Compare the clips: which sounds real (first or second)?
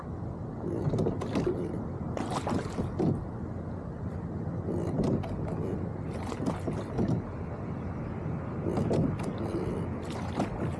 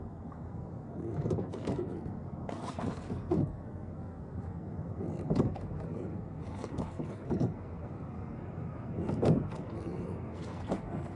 first